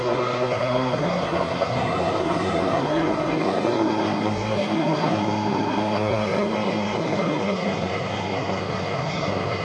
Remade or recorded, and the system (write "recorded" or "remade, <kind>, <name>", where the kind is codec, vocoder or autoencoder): remade, codec, SNAC